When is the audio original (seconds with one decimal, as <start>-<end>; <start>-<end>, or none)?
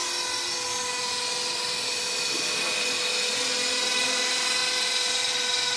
0.0-5.8